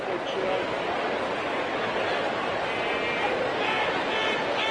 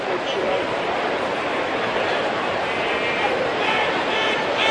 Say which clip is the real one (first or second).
first